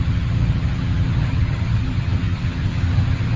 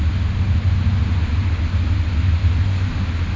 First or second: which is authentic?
second